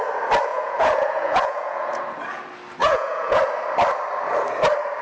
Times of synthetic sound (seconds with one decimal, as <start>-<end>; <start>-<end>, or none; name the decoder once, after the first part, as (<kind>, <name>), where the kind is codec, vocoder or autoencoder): 0.5-2.0 (vocoder, Vocos); 2.8-3.4